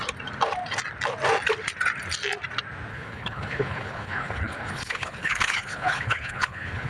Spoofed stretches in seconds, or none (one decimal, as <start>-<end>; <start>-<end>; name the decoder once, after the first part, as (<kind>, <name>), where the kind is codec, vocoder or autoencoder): 2.9-6.9 (codec, HILCodec)